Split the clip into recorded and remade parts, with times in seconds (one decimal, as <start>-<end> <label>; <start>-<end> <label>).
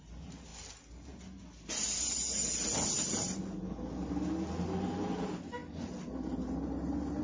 0.0-7.2 recorded